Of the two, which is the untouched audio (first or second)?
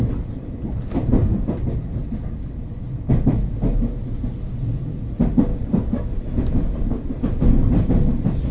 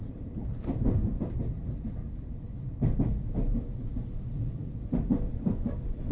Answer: first